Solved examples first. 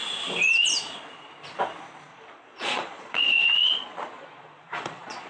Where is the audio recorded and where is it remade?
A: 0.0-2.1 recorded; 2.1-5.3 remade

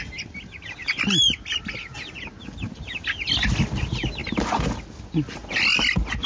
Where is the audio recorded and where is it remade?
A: 0.0-6.3 recorded

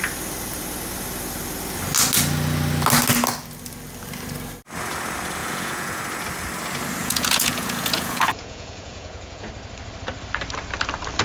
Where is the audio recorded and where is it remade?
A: 0.0-5.4 recorded; 5.4-6.0 remade; 6.0-7.0 recorded; 7.0-9.5 remade; 9.5-11.2 recorded

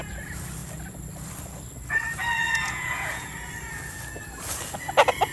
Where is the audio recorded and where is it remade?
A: 0.0-2.4 recorded; 2.4-3.3 remade; 3.3-5.3 recorded

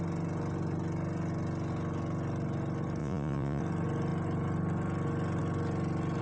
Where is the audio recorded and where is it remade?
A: 0.0-3.0 recorded; 3.0-3.6 remade; 3.6-6.2 recorded

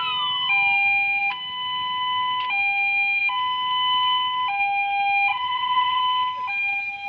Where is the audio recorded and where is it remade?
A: 0.0-5.3 recorded; 5.3-6.0 remade; 6.0-7.1 recorded

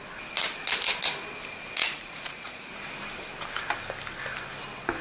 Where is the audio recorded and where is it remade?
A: 0.0-1.8 recorded; 1.8-2.7 remade; 2.7-5.0 recorded

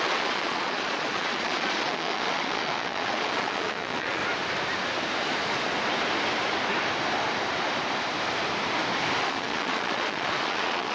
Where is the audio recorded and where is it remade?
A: 0.0-4.2 remade; 4.2-9.2 recorded; 9.2-10.9 remade